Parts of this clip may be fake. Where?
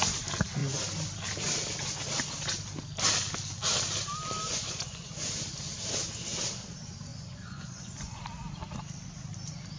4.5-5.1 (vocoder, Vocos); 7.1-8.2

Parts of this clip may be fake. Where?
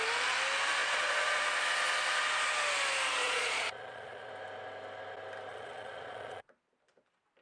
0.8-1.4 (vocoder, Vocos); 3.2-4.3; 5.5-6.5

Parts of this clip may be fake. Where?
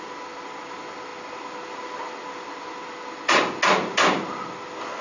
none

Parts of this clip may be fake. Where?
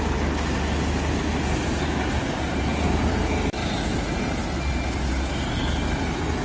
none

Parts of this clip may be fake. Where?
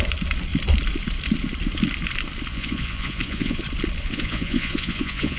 2.5-3.6 (vocoder, Vocos); 4.1-5.4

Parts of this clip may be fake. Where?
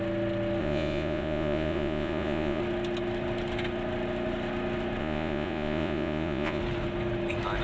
0.6-2.6 (vocoder, Vocos); 5.0-6.6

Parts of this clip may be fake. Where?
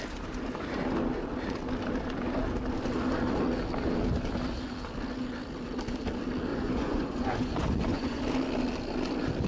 6.5-8.2 (vocoder, Vocos)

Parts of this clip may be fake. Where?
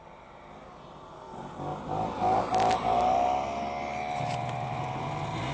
none